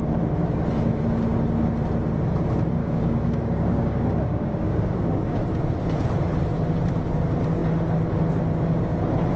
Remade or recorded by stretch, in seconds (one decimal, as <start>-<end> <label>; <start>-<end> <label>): 0.0-2.8 recorded; 2.8-5.4 remade; 5.4-9.4 recorded